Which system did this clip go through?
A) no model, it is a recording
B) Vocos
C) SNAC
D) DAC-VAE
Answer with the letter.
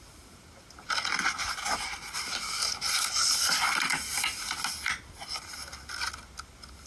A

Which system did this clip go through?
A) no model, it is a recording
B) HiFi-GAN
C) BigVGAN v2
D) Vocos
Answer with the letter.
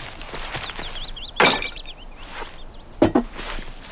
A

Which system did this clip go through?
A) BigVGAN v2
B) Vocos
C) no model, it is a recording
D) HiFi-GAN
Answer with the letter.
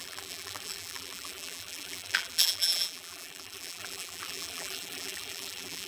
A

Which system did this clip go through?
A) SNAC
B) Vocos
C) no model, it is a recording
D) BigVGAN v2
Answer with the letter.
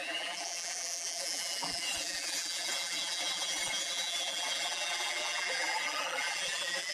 D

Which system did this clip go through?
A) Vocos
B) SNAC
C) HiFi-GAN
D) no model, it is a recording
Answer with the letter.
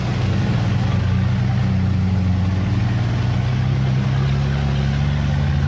D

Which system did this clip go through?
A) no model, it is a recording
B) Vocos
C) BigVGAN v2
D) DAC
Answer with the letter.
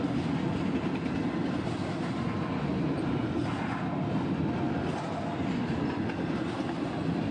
A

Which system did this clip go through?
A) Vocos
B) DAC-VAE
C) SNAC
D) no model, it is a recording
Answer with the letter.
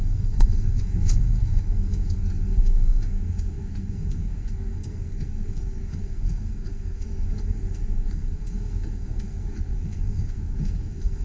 C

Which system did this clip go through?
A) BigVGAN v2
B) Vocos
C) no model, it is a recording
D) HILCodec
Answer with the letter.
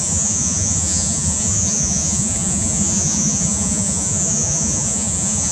B